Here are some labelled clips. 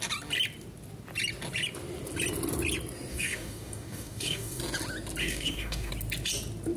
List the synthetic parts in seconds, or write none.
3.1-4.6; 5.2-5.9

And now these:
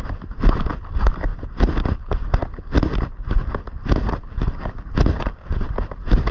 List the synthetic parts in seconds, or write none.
none